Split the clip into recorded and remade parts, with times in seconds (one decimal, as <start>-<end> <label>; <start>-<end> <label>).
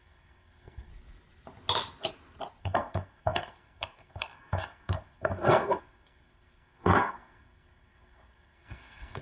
0.0-0.9 remade; 0.9-2.6 recorded; 2.6-9.2 remade